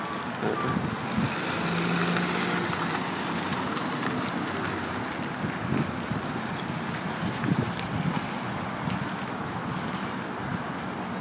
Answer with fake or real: real